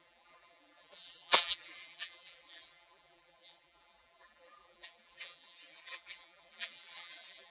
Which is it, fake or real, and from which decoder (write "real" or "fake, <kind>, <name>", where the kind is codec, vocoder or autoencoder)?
fake, vocoder, BigVGAN v2